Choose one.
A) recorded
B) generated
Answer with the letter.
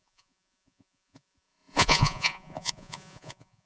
B